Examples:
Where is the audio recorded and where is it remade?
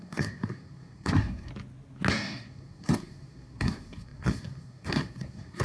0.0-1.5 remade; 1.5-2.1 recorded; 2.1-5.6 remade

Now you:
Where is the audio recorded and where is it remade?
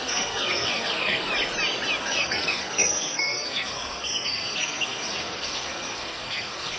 0.0-1.3 remade; 1.3-2.0 recorded; 2.0-6.8 remade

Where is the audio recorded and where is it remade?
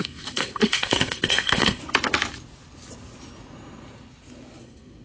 0.0-1.8 remade; 1.8-4.6 recorded; 4.6-5.0 remade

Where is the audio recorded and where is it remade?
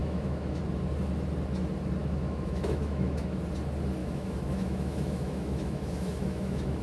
0.0-0.6 remade; 0.6-2.0 recorded; 2.0-3.4 remade; 3.4-4.0 recorded; 4.0-6.8 remade